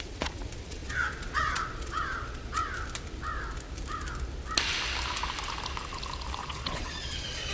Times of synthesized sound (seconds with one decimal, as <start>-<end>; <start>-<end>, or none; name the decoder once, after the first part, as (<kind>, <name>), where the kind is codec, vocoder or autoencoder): 0.0-2.6 (vocoder, Vocos); 6.4-7.5